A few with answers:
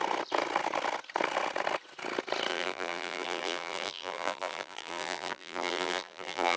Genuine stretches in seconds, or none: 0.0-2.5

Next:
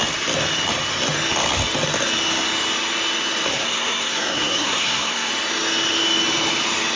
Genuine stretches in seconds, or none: 0.0-3.5; 5.3-7.0

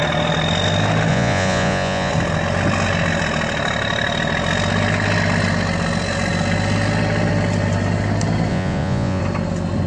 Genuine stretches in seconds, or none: 0.0-1.1; 2.1-8.5; 9.2-9.9

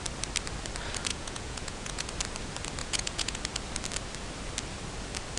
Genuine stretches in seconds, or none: 0.0-1.1; 2.1-2.8; 3.4-5.4